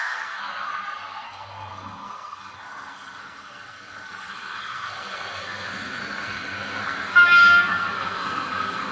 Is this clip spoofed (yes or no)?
yes